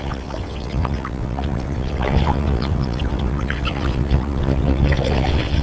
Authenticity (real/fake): fake